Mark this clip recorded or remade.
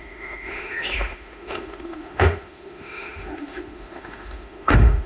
remade